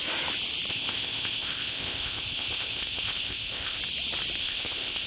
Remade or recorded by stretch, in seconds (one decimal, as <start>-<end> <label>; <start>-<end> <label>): 0.0-0.7 recorded; 0.7-3.8 remade; 3.8-4.4 recorded; 4.4-5.1 remade